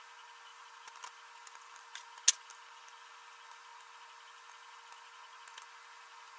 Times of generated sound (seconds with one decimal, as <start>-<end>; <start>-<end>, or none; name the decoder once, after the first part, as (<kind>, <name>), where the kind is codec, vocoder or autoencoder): none